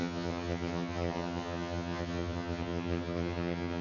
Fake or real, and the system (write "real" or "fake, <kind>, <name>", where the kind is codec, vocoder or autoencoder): fake, vocoder, HiFi-GAN